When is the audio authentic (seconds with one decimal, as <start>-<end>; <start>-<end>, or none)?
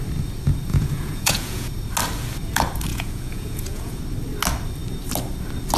0.0-0.7; 1.7-2.9; 4.0-5.8